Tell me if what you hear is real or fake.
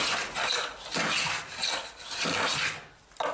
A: real